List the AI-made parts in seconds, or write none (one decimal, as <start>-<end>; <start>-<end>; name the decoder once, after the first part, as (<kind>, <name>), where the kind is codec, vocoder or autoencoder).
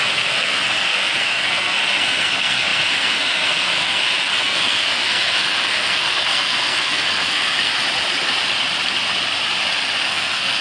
0.0-7.7 (codec, SNAC); 10.0-10.6